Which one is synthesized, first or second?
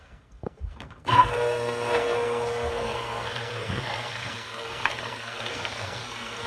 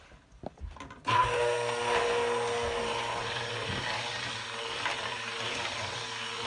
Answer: first